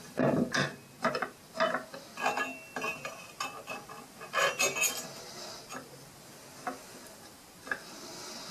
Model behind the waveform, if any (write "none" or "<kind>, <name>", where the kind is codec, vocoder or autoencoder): none